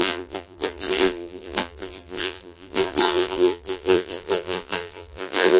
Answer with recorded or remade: remade